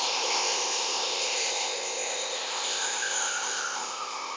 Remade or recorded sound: remade